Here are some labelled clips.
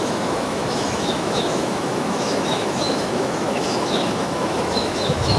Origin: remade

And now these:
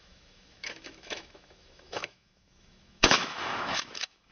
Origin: remade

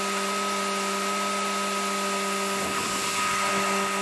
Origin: recorded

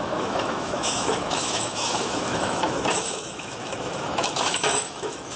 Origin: remade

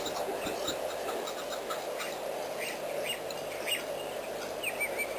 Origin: recorded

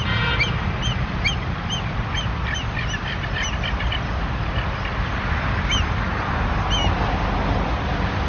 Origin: recorded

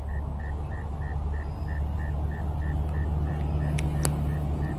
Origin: recorded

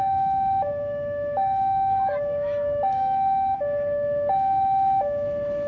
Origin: remade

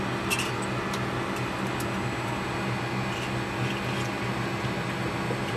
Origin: recorded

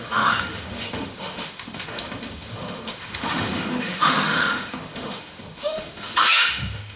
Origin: remade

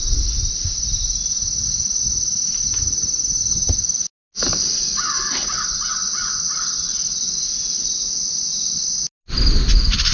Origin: recorded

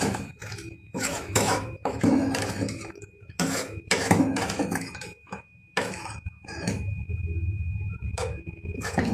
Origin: remade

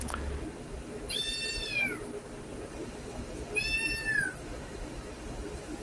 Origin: recorded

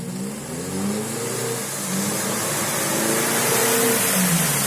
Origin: recorded